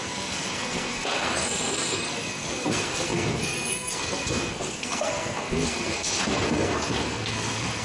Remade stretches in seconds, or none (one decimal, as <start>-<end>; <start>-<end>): 0.0-7.8

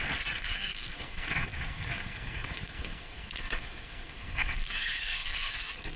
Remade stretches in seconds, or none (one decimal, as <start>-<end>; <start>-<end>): 0.0-6.0

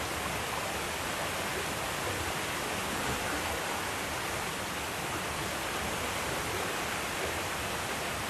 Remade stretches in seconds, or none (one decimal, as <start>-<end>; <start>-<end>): none

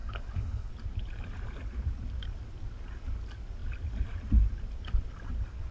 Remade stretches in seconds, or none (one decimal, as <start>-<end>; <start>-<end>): 0.0-0.7